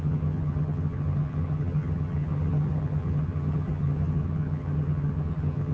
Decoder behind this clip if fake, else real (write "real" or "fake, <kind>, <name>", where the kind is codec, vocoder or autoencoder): fake, vocoder, HiFi-GAN